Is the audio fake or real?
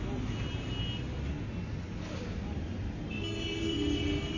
real